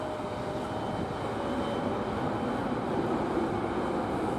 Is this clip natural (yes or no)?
yes